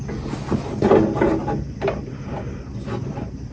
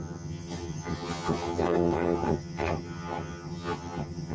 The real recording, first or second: first